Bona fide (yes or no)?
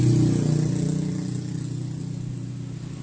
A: yes